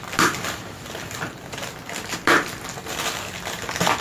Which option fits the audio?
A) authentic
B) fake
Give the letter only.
A